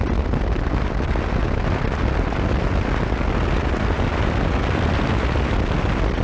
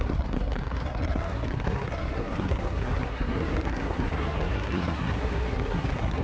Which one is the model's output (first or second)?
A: second